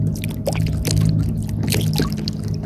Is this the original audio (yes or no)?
yes